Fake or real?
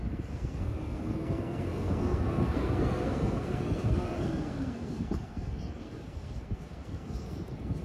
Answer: fake